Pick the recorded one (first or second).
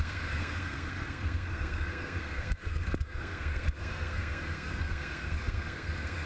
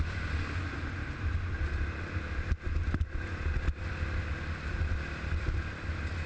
second